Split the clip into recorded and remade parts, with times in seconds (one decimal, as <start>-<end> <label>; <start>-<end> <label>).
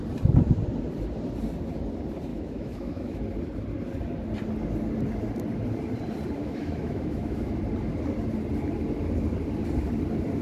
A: 0.0-2.3 recorded; 2.3-3.2 remade; 3.2-6.4 recorded; 6.4-7.6 remade; 7.6-10.4 recorded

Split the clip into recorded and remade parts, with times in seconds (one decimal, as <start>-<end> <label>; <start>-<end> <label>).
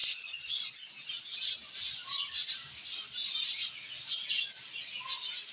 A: 0.0-5.5 recorded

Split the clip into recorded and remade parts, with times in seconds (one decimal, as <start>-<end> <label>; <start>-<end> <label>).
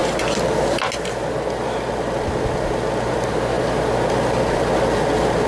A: 0.0-5.5 recorded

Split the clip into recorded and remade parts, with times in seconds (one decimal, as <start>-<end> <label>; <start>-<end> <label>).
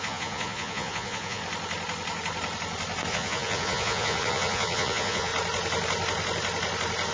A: 0.0-1.4 remade; 1.4-3.1 recorded; 3.1-5.3 remade; 5.3-7.1 recorded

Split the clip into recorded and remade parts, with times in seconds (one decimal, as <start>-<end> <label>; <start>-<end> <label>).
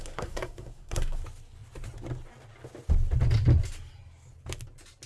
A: 0.0-1.2 remade; 1.2-5.1 recorded